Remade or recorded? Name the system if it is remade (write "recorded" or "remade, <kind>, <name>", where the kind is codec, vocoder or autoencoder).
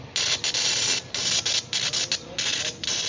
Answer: recorded